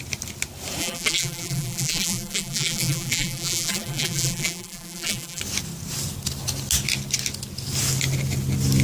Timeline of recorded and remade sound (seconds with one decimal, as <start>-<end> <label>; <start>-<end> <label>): 0.0-0.8 recorded; 0.8-5.4 remade; 5.4-8.8 recorded